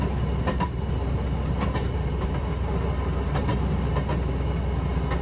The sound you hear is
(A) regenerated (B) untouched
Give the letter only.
B